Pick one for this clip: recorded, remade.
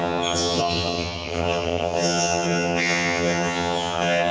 remade